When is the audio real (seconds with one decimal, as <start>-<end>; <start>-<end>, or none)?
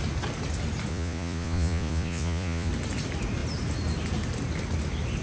0.0-0.9; 2.7-5.2